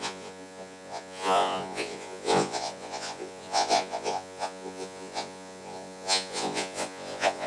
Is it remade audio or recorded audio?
remade